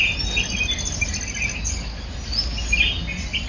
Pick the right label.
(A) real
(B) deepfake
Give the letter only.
A